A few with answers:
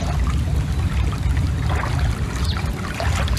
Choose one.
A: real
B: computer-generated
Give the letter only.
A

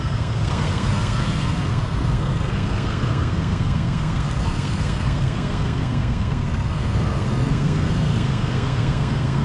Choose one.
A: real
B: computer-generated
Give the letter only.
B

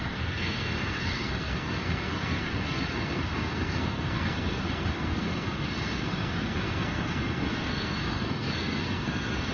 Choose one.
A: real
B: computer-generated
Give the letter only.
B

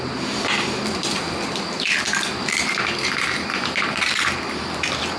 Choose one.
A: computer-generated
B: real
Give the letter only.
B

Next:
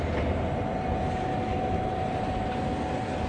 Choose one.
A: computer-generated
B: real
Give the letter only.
B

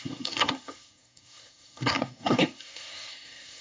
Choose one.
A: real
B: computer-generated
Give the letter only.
B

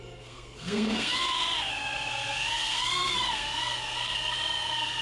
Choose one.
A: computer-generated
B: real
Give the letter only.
A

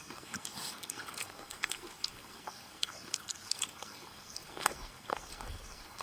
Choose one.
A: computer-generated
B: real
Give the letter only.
A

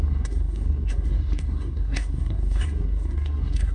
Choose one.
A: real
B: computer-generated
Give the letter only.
B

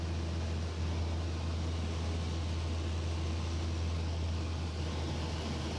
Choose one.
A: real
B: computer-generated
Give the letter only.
A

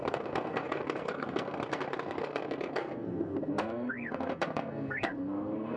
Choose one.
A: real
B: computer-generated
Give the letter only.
B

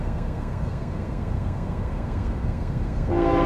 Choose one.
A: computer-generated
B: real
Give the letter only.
A